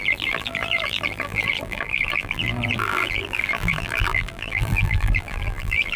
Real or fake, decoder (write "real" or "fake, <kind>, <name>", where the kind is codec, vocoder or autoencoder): fake, vocoder, BigVGAN v2